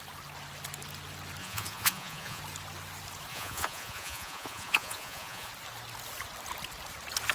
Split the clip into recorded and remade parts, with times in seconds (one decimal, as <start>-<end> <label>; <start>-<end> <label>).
0.0-1.4 recorded; 1.4-2.4 remade; 2.4-3.3 recorded; 3.3-5.5 remade; 5.5-7.3 recorded